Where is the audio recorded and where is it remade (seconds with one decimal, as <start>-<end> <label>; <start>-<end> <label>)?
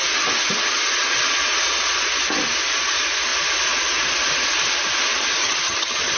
0.0-5.4 recorded; 5.4-6.2 remade